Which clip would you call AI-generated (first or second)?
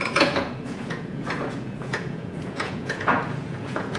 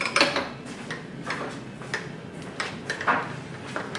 first